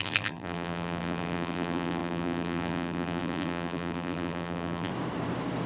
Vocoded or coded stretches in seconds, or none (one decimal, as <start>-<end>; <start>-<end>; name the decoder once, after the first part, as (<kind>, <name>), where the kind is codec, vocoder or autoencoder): 0.0-4.9 (vocoder, BigVGAN v2)